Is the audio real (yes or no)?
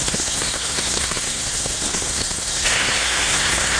no